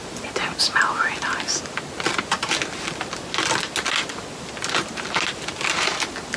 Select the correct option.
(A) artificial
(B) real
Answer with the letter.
B